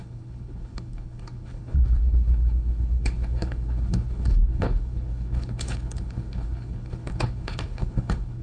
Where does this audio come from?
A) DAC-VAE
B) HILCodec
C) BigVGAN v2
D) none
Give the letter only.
B